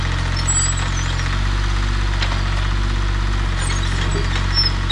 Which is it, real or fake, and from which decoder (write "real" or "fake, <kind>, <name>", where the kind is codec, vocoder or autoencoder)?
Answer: real